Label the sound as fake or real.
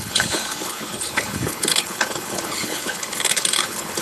fake